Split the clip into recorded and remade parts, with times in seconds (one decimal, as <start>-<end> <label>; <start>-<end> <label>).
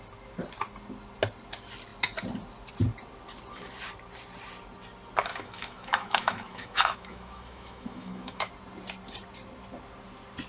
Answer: 0.0-5.3 recorded; 5.3-8.5 remade; 8.5-10.5 recorded